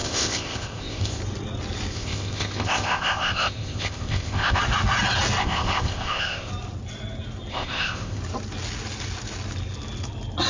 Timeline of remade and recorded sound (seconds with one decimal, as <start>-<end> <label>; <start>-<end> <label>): 0.0-1.2 remade; 1.2-1.9 recorded; 1.9-4.6 remade; 4.6-5.4 recorded; 5.4-6.5 remade; 6.5-7.5 recorded; 7.5-8.2 remade; 8.2-10.5 recorded